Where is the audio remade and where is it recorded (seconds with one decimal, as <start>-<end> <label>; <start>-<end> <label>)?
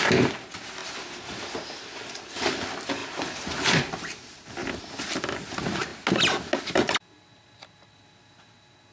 0.0-0.8 recorded; 0.8-2.2 remade; 2.2-3.0 recorded; 3.0-4.8 remade; 4.8-8.9 recorded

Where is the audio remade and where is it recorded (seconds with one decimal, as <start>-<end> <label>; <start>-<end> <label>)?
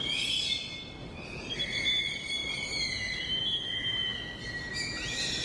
0.0-5.4 recorded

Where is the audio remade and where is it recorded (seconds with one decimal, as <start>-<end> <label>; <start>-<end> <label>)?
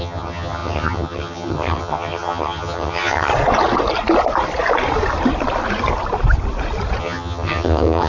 0.0-3.3 remade; 3.3-7.0 recorded; 7.0-8.1 remade